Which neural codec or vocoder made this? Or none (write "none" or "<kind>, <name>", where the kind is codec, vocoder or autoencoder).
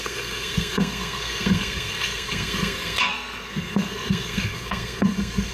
codec, SNAC